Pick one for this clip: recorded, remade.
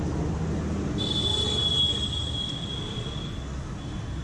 recorded